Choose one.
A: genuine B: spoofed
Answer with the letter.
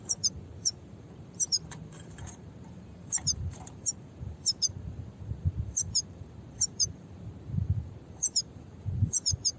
B